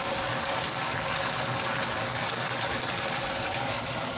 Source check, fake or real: fake